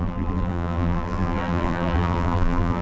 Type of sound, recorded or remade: remade